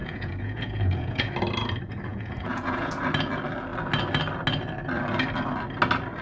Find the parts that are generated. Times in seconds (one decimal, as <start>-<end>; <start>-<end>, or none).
0.0-1.3; 2.1-3.0